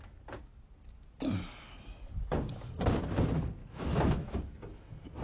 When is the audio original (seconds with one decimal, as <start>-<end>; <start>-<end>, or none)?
0.0-3.6; 4.4-5.2